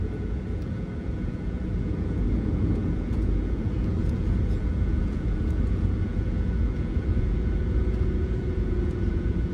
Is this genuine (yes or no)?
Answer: no